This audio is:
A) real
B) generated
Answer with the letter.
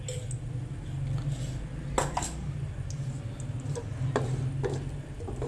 A